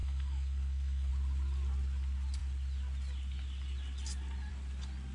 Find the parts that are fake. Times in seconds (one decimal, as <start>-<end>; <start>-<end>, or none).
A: 0.0-1.1